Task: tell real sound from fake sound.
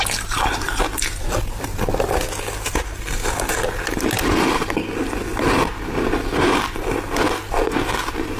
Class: real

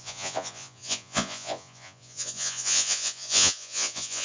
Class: fake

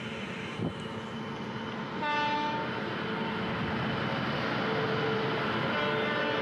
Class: real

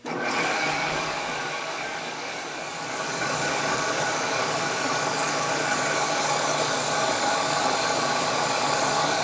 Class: fake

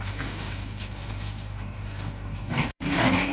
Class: fake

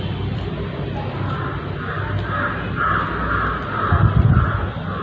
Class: real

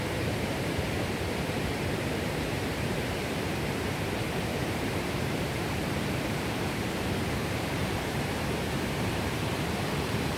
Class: fake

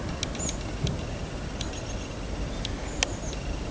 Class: real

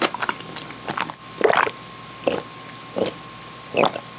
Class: real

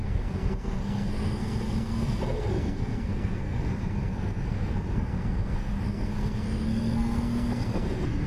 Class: fake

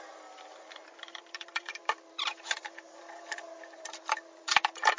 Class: fake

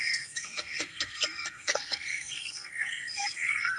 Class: fake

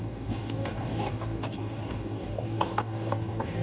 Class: fake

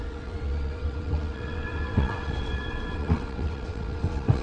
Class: fake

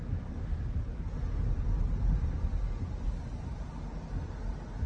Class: real